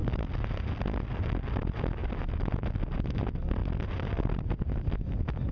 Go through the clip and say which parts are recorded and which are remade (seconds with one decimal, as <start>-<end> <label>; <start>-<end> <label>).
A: 0.0-5.5 recorded